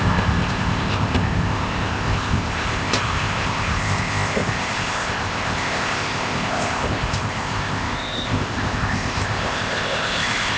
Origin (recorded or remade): remade